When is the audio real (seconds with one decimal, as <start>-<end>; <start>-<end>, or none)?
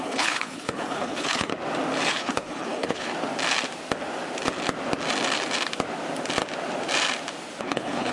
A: 1.5-2.1; 3.1-7.6